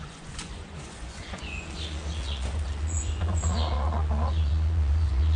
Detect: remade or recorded remade